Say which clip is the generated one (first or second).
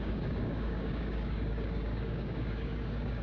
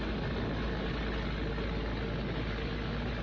first